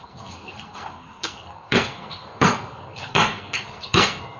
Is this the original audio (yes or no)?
no